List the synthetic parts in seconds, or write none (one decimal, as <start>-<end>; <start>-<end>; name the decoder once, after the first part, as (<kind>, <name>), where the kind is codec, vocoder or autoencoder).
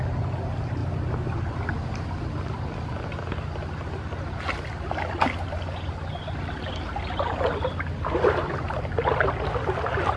none